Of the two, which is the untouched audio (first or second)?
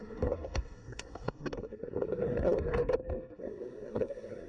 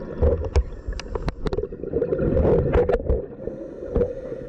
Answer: second